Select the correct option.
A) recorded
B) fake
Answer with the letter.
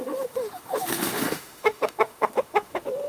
B